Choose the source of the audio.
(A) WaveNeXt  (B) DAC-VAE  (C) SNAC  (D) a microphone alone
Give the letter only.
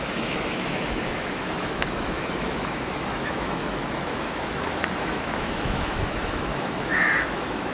B